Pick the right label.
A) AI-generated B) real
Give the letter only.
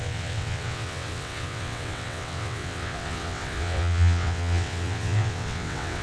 A